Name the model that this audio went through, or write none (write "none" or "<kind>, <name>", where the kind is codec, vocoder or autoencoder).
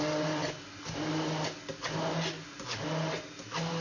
none